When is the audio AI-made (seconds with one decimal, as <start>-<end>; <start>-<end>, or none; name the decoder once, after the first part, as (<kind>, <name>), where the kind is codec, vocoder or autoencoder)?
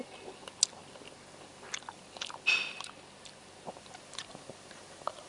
none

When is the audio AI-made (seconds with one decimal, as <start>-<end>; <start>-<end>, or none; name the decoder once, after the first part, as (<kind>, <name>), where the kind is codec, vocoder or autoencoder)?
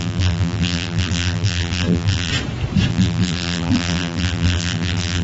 0.0-2.3 (vocoder, BigVGAN v2); 2.9-5.2